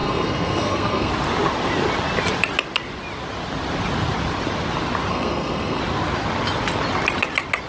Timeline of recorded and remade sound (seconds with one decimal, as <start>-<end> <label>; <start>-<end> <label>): 0.0-1.1 remade; 1.1-5.1 recorded; 5.1-5.8 remade; 5.8-7.7 recorded